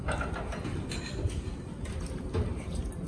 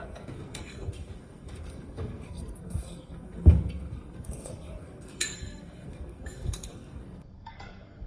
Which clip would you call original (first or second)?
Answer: first